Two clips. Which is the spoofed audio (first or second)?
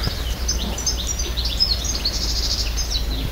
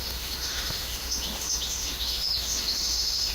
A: second